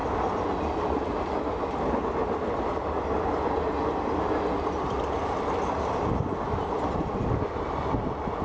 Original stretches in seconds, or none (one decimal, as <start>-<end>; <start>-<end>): 0.0-8.4